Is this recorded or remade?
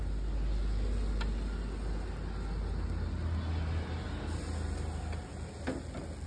recorded